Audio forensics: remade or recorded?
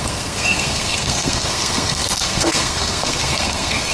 remade